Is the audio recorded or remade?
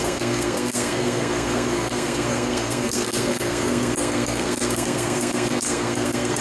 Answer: remade